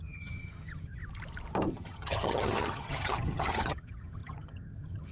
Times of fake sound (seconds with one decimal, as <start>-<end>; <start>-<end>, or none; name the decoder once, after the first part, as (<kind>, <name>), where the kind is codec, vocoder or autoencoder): 0.0-1.0 (vocoder, HiFi-GAN); 1.7-5.1